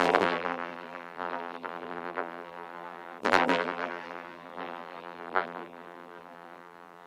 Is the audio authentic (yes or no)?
no